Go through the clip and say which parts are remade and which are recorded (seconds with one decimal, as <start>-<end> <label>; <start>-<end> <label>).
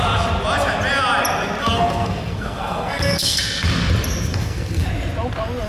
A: 0.0-1.6 recorded; 1.6-3.4 remade; 3.4-4.3 recorded; 4.3-4.9 remade; 4.9-5.7 recorded